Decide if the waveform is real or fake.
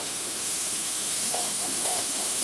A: fake